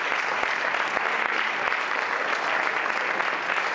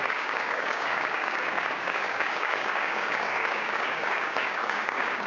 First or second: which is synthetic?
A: second